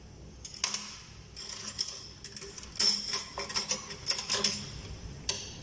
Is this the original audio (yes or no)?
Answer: yes